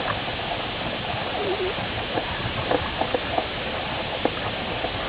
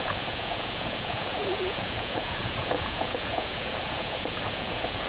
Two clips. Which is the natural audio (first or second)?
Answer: first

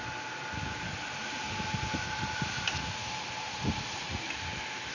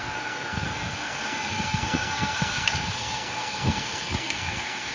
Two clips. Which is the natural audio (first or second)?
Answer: first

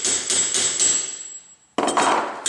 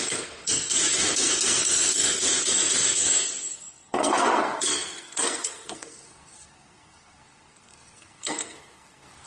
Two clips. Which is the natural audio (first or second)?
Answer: first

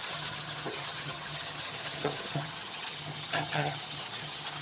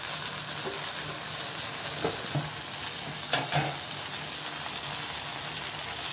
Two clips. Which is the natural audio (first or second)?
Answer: second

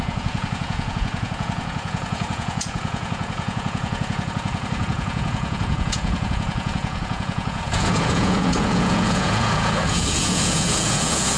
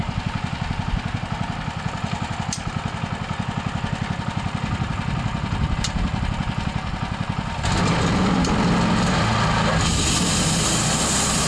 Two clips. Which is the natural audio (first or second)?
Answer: second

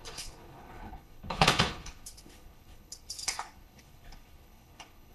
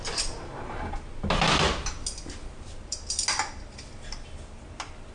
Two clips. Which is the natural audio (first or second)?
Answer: second